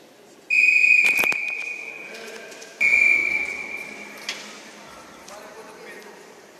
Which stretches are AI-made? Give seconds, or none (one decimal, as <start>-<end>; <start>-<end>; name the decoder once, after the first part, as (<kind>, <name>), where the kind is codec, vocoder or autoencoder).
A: none